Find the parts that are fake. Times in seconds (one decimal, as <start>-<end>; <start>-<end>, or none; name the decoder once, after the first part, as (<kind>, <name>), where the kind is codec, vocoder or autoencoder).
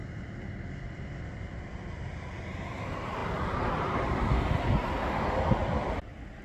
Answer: none